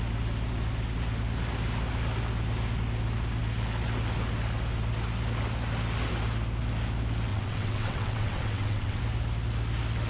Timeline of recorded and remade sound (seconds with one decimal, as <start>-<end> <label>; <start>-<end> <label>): 0.0-7.3 recorded; 7.3-9.0 remade; 9.0-10.1 recorded